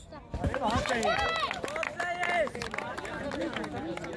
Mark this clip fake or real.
real